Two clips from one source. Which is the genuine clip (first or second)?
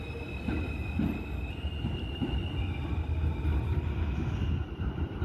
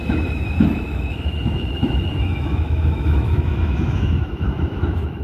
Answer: first